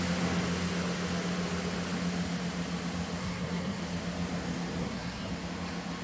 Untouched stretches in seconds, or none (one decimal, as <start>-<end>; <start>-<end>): 0.0-3.2; 3.8-4.8; 5.3-6.0